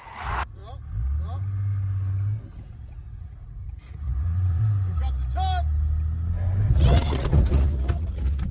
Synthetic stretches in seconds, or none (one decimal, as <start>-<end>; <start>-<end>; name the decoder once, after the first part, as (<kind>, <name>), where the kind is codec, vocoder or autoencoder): 0.0-0.6 (vocoder, Vocos); 2.6-4.6; 6.7-8.5